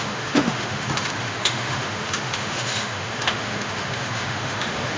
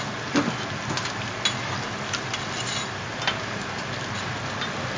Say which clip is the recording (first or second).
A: second